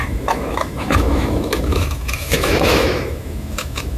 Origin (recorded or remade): remade